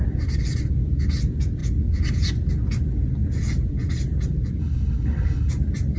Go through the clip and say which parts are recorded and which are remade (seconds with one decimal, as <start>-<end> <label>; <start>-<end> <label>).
0.0-4.6 recorded; 4.6-5.5 remade; 5.5-6.0 recorded